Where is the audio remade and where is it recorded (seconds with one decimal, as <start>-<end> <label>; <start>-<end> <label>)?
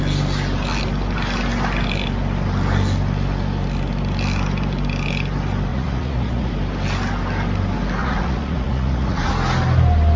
0.0-5.7 recorded; 5.7-6.5 remade; 6.5-8.0 recorded; 8.0-9.3 remade; 9.3-10.2 recorded